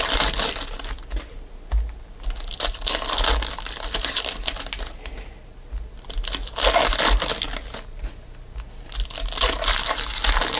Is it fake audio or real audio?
real